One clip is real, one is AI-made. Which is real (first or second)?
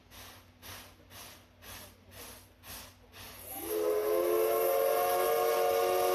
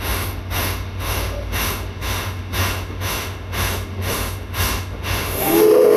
first